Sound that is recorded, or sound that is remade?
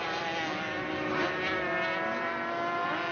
recorded